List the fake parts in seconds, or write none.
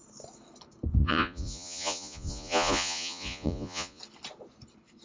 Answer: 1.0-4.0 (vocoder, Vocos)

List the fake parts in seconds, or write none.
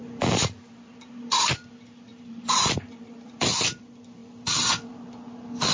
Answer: 0.0-1.1 (vocoder, BigVGAN v2); 2.1-3.8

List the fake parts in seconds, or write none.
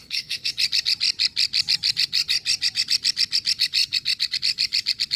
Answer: 0.0-0.5 (codec, SNAC)